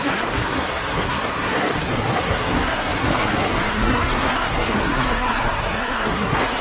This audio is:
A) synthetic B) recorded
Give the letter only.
A